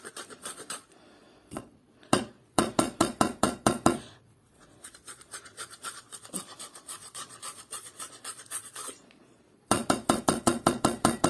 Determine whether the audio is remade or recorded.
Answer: remade